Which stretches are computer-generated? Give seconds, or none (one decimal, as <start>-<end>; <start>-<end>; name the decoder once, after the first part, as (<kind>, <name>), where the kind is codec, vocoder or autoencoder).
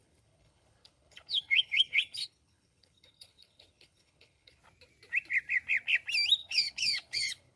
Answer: 0.0-4.6 (codec, HILCodec); 6.4-7.6